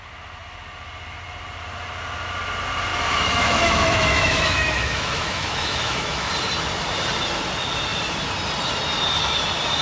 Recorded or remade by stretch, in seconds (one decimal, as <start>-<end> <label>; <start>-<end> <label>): 0.0-2.9 recorded; 2.9-6.3 remade; 6.3-9.8 recorded